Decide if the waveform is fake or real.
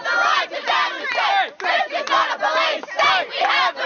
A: real